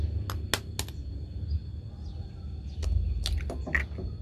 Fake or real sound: real